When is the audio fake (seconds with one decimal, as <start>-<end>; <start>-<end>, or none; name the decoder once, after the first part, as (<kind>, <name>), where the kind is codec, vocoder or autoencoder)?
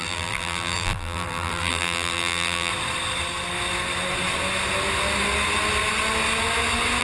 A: 0.0-2.7 (vocoder, BigVGAN v2)